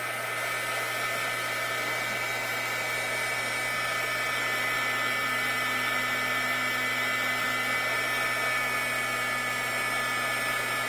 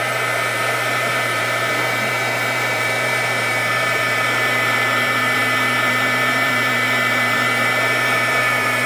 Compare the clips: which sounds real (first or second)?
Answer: first